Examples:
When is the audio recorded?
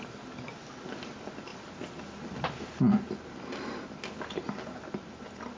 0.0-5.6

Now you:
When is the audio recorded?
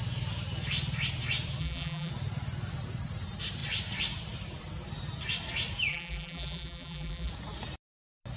0.0-1.6; 2.1-5.9; 7.3-8.4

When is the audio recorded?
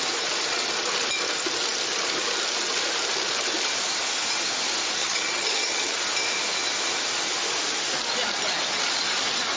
0.0-5.0; 6.0-9.6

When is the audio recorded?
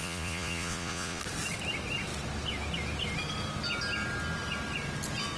1.2-5.4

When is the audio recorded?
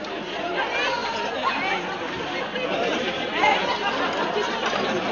0.0-5.1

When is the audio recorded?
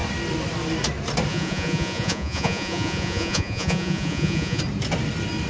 0.0-1.3; 4.6-5.5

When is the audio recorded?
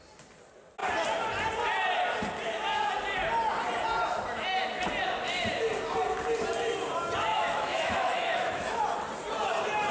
0.0-7.3; 8.8-9.9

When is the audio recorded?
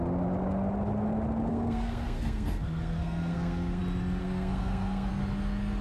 0.0-1.5; 3.8-4.2; 5.1-5.8